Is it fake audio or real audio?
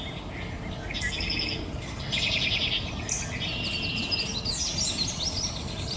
real